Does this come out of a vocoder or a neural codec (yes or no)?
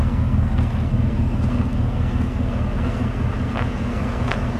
yes